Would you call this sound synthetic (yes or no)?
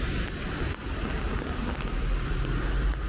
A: no